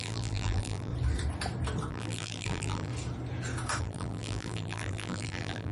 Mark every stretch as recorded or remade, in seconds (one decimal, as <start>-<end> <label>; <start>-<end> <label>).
0.0-0.9 remade; 0.9-1.9 recorded; 1.9-2.9 remade; 2.9-3.8 recorded; 3.8-5.7 remade